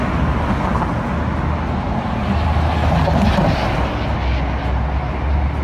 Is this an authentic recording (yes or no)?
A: yes